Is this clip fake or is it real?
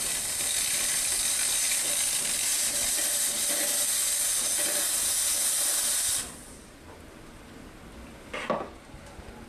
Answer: real